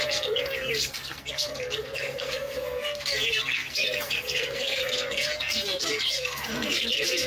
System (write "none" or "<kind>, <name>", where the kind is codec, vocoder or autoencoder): codec, SNAC